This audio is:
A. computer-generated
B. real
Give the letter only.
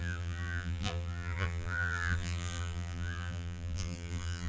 A